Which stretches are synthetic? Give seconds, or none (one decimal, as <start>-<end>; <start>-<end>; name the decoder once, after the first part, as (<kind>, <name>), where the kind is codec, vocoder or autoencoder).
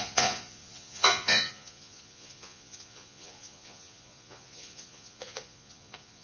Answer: 0.0-6.2 (vocoder, Vocos)